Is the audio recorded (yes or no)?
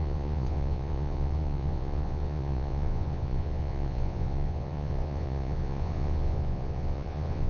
no